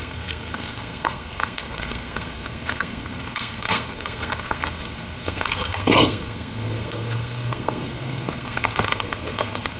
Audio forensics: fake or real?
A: fake